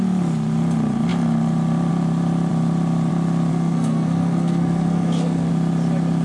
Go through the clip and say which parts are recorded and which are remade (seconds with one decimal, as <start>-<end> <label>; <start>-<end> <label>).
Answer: 0.0-3.5 recorded; 3.5-5.5 remade; 5.5-6.2 recorded